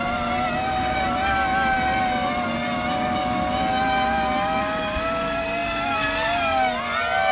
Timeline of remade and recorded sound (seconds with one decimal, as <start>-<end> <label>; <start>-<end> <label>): 0.0-7.3 recorded